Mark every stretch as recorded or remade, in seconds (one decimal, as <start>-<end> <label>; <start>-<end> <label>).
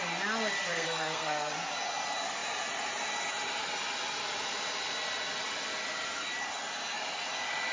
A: 0.0-0.7 recorded; 0.7-1.5 remade; 1.5-7.7 recorded